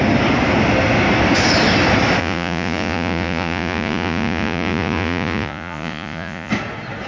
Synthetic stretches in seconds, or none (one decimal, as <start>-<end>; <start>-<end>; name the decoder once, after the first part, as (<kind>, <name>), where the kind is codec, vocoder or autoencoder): 2.2-6.5 (vocoder, Vocos)